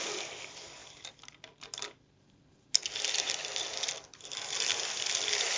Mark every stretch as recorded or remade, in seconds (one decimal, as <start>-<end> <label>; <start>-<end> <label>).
0.0-5.6 recorded

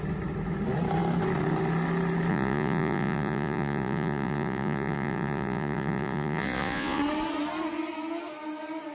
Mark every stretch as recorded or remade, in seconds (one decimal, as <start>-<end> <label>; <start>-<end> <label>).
0.0-2.3 recorded; 2.3-7.0 remade; 7.0-8.9 recorded

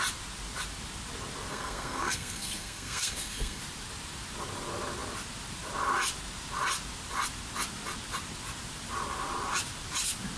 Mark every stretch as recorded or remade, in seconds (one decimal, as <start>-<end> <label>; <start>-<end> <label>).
0.0-1.5 recorded; 1.5-3.6 remade; 3.6-10.4 recorded